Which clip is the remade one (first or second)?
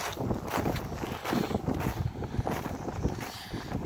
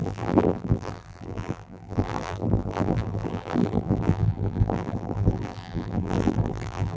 second